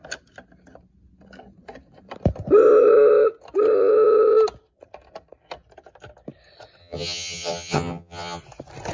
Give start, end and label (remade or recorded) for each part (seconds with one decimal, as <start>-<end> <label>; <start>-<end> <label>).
0.0-6.8 recorded; 6.8-8.4 remade; 8.4-8.9 recorded